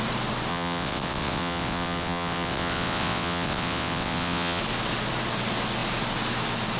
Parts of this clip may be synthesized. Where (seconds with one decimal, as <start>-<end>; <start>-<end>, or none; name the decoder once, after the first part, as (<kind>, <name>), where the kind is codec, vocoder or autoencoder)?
0.5-4.6 (vocoder, WaveNeXt)